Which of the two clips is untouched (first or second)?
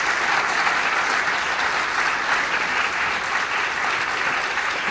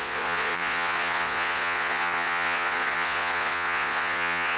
first